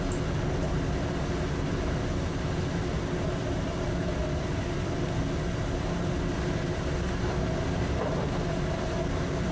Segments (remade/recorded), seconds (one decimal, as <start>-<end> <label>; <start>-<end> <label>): 0.0-3.4 recorded; 3.4-5.0 remade; 5.0-9.5 recorded